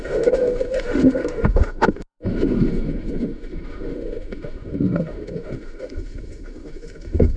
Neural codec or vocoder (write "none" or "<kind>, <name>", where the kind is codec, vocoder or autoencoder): autoencoder, DAC-VAE